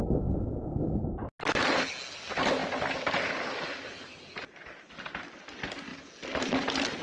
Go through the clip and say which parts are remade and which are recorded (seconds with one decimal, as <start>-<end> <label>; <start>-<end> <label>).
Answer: 0.0-7.0 recorded